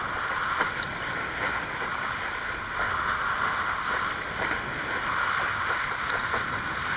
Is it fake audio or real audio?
real